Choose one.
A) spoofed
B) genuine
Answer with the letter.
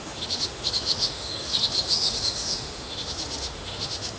A